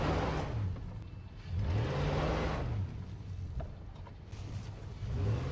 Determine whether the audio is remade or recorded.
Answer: recorded